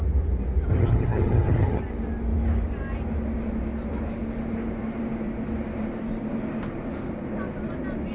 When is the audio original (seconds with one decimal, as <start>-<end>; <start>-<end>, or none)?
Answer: 0.0-0.7; 1.8-8.1